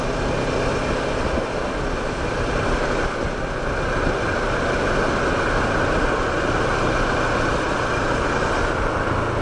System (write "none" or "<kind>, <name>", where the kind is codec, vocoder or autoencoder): none